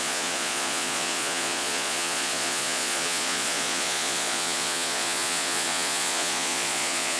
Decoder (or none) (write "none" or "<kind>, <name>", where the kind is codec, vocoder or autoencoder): vocoder, Vocos